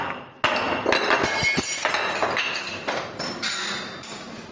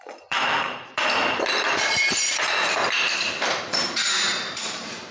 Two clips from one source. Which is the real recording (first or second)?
first